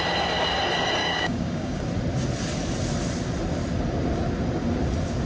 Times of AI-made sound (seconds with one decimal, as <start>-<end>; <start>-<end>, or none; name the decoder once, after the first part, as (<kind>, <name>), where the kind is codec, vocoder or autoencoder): 1.0-1.8 (codec, DAC)